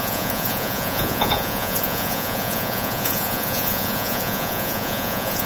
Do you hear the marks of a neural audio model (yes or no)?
yes